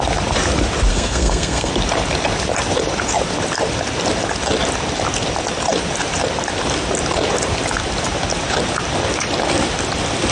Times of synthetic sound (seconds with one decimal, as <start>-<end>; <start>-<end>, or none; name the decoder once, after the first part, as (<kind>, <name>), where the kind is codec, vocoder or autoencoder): 0.9-1.7 (codec, SNAC)